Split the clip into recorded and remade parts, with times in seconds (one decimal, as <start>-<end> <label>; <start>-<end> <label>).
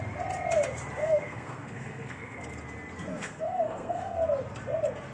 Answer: 0.0-1.0 recorded; 1.0-2.4 remade; 2.4-3.1 recorded; 3.1-4.2 remade; 4.2-5.1 recorded